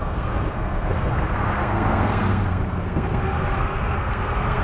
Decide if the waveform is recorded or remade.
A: remade